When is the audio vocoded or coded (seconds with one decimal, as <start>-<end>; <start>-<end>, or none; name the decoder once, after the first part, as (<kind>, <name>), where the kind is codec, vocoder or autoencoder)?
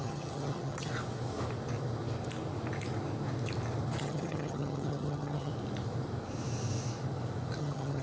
0.0-0.9 (vocoder, HiFi-GAN); 4.0-5.5; 7.6-8.0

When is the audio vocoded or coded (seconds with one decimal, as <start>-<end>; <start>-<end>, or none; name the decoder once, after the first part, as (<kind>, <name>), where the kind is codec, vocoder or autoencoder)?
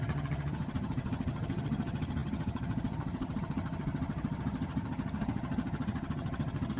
0.0-6.8 (vocoder, HiFi-GAN)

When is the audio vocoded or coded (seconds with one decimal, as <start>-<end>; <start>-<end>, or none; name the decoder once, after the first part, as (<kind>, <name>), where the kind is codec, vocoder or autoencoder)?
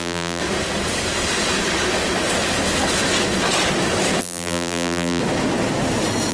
0.0-0.4 (vocoder, BigVGAN v2); 4.2-5.2